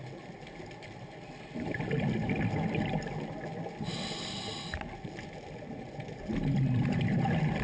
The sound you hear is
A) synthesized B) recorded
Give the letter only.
B